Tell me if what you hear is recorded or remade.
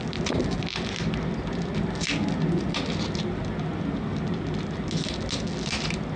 recorded